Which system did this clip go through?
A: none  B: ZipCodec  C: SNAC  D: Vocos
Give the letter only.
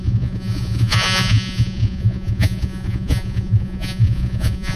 D